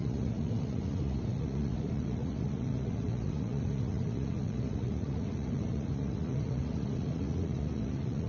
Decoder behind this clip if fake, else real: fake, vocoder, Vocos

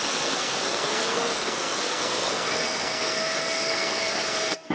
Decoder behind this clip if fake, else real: fake, codec, SNAC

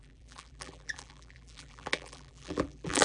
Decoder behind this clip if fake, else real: fake, vocoder, BigVGAN v2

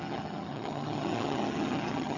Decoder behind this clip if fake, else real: fake, vocoder, HiFi-GAN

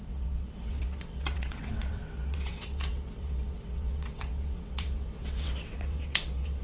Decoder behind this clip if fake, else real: fake, vocoder, WaveNeXt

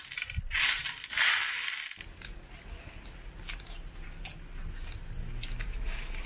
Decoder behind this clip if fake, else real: real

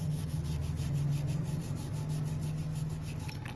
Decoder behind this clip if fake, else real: real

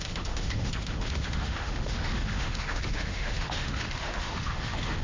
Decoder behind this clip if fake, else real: fake, autoencoder, DAC-VAE